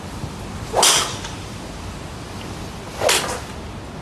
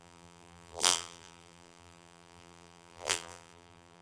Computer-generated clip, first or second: second